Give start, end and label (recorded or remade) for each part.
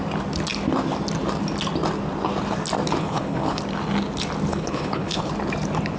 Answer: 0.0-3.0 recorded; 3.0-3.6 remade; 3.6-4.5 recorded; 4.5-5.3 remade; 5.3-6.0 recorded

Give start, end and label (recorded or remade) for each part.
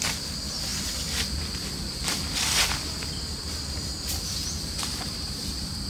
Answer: 0.0-3.4 recorded; 3.4-5.9 remade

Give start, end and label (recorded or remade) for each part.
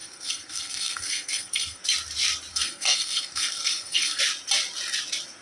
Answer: 0.0-1.8 remade; 1.8-2.5 recorded; 2.5-4.2 remade; 4.2-5.4 recorded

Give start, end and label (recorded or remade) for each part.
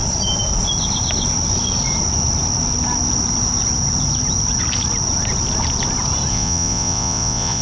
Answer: 0.0-6.3 recorded; 6.3-7.6 remade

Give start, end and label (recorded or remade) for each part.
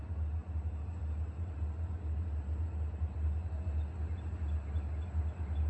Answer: 0.0-5.7 recorded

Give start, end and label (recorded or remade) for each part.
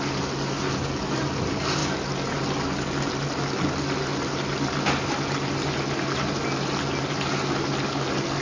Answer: 0.0-8.4 recorded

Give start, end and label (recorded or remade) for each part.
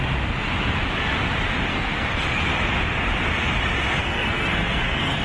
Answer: 0.0-1.7 recorded; 1.7-2.2 remade; 2.2-4.0 recorded; 4.0-5.2 remade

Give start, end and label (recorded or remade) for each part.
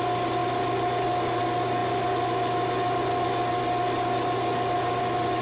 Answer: 0.0-5.4 recorded